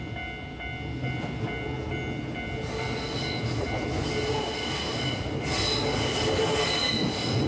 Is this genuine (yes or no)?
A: yes